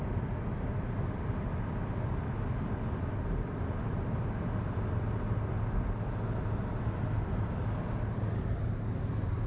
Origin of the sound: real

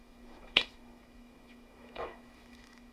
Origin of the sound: fake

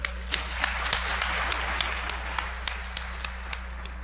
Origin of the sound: real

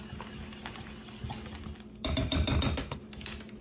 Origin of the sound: real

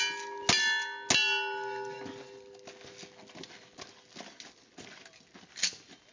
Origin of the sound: real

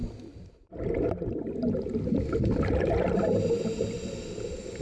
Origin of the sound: real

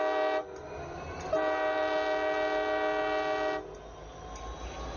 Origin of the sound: real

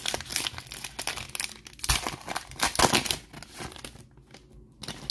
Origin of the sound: real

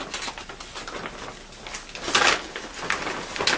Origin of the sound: real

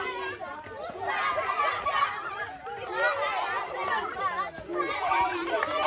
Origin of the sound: real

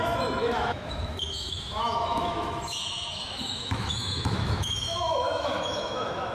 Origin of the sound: fake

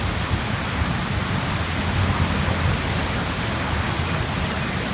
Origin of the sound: real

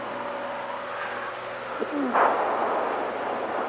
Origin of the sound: real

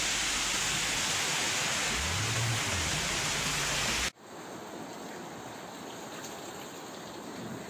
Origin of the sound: real